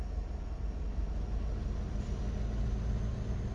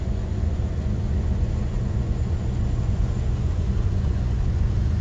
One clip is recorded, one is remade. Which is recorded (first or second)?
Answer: first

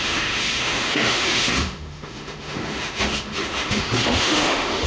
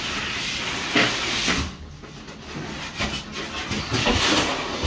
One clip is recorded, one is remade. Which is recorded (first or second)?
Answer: second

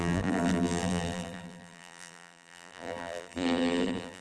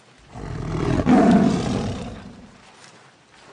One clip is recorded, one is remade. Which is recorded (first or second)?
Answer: second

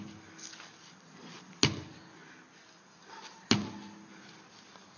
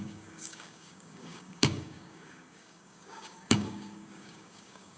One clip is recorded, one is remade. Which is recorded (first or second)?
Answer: first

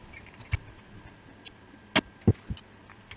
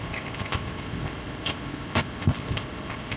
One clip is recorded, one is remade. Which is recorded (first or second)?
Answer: first